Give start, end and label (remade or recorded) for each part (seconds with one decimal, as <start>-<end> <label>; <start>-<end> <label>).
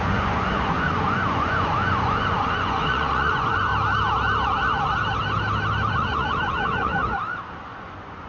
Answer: 0.0-3.7 remade; 3.7-5.9 recorded; 5.9-7.0 remade; 7.0-7.6 recorded; 7.6-8.3 remade